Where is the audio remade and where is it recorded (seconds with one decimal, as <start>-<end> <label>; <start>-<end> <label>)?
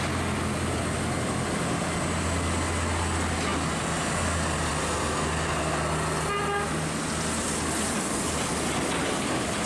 0.0-9.7 recorded